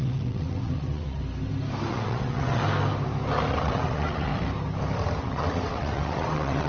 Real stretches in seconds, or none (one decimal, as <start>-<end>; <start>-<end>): 1.2-1.9; 2.6-3.5; 4.3-5.2